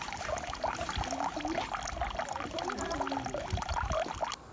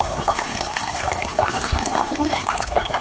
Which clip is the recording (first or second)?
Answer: first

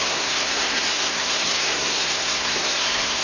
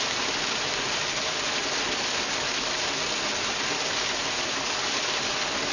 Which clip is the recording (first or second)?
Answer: second